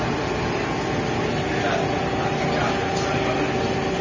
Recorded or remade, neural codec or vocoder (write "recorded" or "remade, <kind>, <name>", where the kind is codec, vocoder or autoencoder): recorded